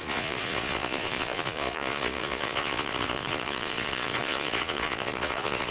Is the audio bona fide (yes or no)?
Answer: no